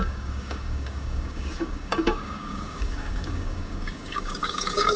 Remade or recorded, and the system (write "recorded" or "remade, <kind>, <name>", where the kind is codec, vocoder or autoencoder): remade, codec, DAC